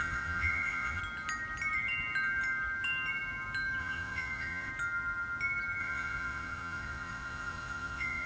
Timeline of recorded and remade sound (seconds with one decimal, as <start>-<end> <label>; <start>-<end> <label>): 0.0-1.0 remade; 1.0-3.8 recorded; 3.8-4.7 remade; 4.7-5.8 recorded; 5.8-8.3 remade